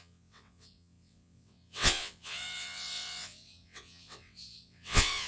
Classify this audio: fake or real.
fake